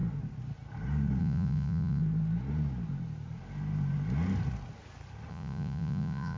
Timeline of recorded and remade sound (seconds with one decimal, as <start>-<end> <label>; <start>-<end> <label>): 0.0-1.2 recorded; 1.2-2.0 remade; 2.0-5.3 recorded; 5.3-6.4 remade